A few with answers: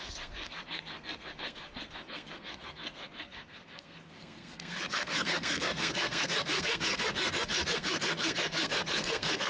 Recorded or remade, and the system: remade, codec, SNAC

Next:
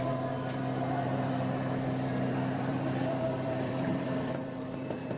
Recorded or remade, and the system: remade, vocoder, BigVGAN v2